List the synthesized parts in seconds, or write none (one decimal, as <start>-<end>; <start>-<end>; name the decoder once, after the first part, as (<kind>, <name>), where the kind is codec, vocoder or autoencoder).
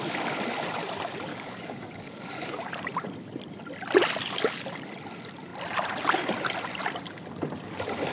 1.3-2.7 (codec, DAC)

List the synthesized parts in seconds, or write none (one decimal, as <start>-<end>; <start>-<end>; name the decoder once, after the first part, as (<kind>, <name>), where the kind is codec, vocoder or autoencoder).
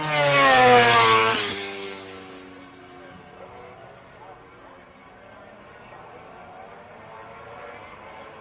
1.2-2.3 (codec, DAC)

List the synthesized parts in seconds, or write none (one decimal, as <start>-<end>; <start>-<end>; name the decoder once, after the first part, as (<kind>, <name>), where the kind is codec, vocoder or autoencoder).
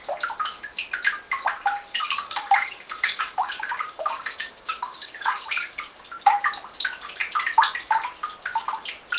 2.0-6.0 (codec, DAC)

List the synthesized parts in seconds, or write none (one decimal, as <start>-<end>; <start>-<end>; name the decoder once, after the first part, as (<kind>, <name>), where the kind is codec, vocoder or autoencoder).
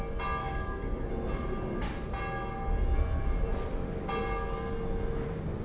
0.4-1.1 (codec, DAC)